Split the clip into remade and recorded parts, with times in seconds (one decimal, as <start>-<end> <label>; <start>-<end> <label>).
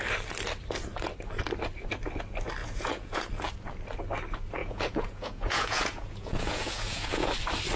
0.0-2.6 recorded; 2.6-3.3 remade; 3.3-4.6 recorded; 4.6-7.3 remade; 7.3-7.8 recorded